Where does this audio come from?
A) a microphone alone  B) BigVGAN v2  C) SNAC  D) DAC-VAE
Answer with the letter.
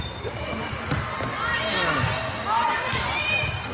A